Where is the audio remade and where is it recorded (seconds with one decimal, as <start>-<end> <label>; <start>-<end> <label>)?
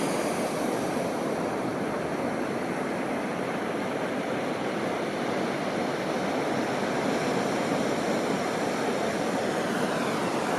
0.0-1.7 remade; 1.7-4.1 recorded; 4.1-7.7 remade; 7.7-8.4 recorded; 8.4-10.6 remade